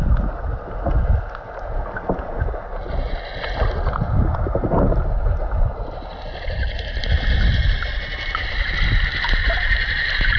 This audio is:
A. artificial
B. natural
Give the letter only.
B